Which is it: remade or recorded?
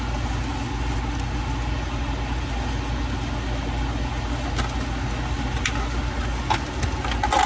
recorded